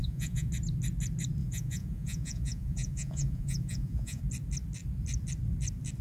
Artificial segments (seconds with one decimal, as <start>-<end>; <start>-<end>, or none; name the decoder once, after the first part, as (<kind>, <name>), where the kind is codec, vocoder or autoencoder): 0.0-0.5 (vocoder, Vocos); 1.4-4.2